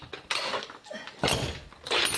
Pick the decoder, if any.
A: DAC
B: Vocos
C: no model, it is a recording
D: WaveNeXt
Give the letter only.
C